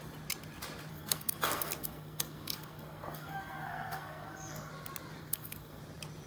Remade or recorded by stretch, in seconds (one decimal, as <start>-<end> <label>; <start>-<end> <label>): 0.0-0.9 recorded; 0.9-4.7 remade; 4.7-5.2 recorded; 5.2-5.8 remade; 5.8-6.3 recorded